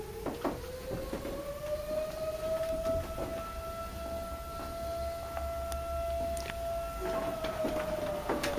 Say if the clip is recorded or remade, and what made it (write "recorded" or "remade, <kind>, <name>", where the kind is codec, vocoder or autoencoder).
recorded